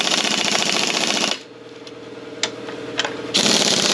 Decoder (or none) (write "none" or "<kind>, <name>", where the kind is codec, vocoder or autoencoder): none